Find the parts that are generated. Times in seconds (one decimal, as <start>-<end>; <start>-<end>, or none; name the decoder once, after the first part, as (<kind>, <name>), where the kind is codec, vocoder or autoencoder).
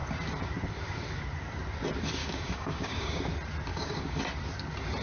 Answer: 2.2-3.2 (codec, DAC); 3.7-4.2